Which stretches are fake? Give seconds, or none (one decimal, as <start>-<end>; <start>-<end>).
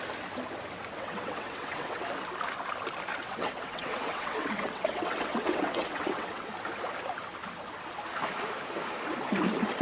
0.9-2.0; 3.1-6.5